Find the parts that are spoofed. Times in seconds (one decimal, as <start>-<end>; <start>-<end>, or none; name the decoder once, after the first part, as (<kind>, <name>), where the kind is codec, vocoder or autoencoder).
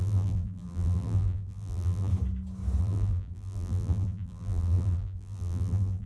0.0-2.1 (vocoder, BigVGAN v2); 2.8-6.1